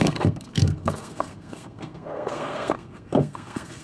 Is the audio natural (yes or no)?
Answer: no